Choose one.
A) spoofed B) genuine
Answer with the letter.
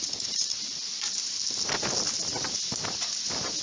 B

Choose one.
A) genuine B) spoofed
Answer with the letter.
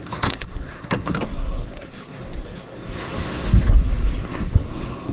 B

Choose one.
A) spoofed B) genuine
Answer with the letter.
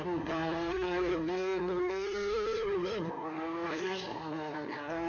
A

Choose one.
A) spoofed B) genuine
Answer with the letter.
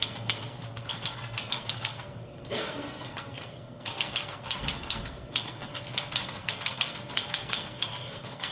A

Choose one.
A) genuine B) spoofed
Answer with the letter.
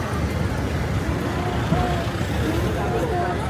A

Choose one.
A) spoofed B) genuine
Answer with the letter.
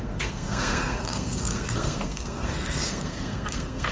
A